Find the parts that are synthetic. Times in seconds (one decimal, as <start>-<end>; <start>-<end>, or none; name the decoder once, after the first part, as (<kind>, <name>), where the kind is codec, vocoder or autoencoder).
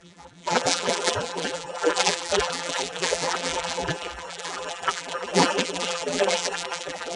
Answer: 0.0-7.2 (vocoder, BigVGAN v2)